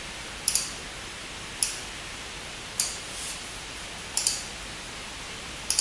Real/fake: real